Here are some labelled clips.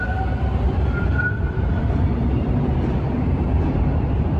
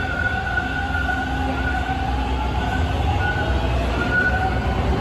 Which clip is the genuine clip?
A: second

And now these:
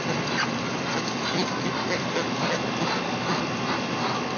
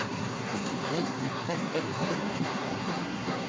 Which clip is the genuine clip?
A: first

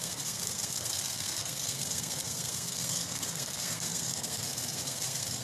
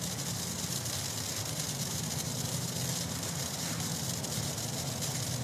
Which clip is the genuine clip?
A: second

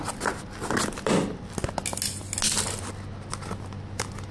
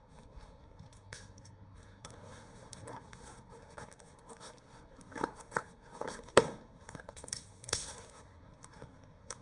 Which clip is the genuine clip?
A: first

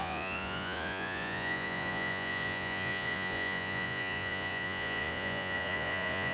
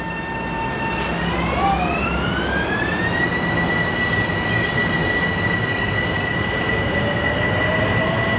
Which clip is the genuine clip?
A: second